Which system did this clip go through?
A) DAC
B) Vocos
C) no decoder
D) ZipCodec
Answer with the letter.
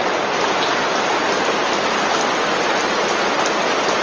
C